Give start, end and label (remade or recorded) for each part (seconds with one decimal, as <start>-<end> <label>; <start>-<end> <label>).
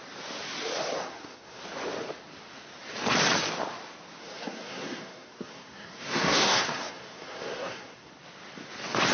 0.0-1.0 recorded; 1.0-1.6 remade; 1.6-4.2 recorded; 4.2-8.1 remade; 8.1-9.1 recorded